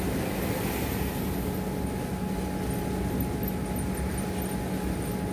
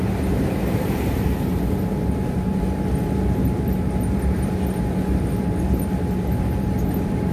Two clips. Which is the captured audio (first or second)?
first